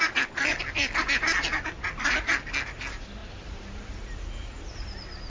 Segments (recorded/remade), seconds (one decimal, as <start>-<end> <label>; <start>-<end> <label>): 0.0-3.2 recorded; 3.2-3.8 remade; 3.8-5.3 recorded